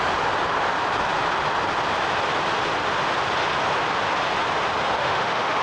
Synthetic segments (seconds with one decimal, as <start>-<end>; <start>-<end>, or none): 5.0-5.6